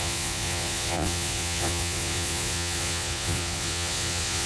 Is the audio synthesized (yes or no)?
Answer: yes